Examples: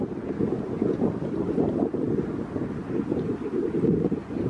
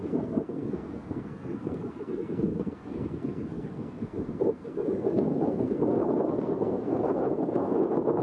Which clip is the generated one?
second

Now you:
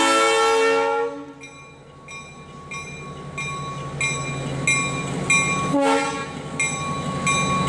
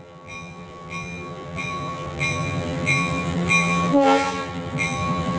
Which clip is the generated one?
second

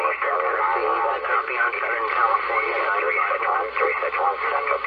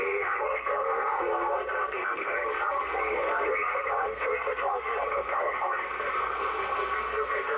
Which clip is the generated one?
second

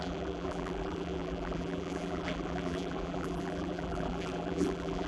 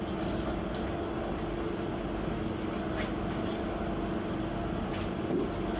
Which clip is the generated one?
first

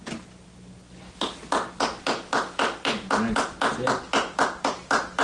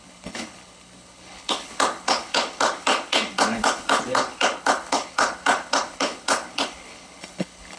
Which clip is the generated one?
second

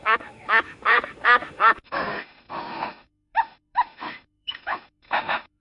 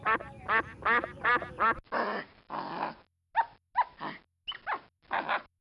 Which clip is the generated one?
first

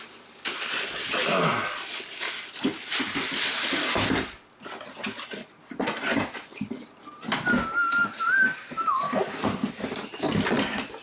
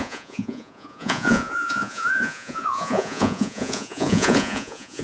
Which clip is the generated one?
second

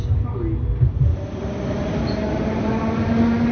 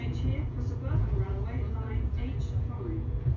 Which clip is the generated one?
second